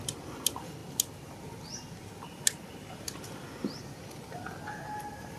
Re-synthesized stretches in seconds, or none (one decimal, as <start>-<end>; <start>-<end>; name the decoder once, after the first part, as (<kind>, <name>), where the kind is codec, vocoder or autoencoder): none